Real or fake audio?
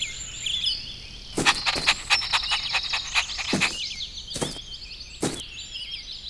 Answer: real